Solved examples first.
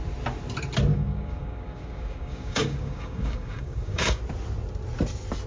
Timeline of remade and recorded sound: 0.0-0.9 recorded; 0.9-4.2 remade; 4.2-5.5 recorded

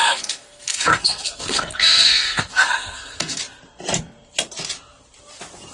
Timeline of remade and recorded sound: 0.0-3.4 remade; 3.4-5.7 recorded

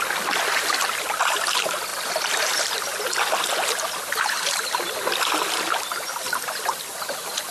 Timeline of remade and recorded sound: 0.0-7.5 recorded

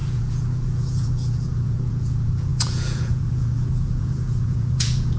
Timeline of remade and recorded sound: 0.0-5.2 remade

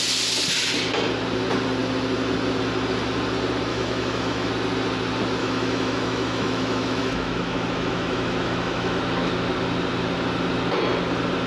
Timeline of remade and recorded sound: 0.0-3.7 recorded; 3.7-4.5 remade; 4.5-5.4 recorded; 5.4-9.0 remade; 9.0-11.5 recorded

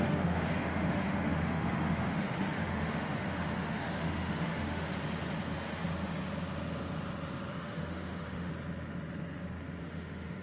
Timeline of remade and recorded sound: 0.0-4.9 remade; 4.9-7.5 recorded; 7.5-8.5 remade; 8.5-9.8 recorded; 9.8-10.4 remade

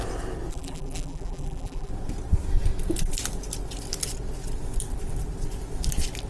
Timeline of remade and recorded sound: 0.0-0.5 recorded; 0.5-1.9 remade; 1.9-6.3 recorded

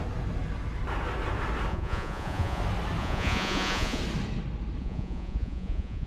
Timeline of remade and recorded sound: 0.0-1.7 recorded; 1.7-2.6 remade; 2.6-3.0 recorded; 3.0-4.0 remade; 4.0-4.8 recorded; 4.8-6.1 remade